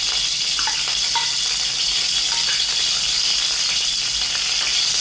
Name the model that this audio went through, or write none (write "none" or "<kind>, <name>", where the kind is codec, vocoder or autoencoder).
none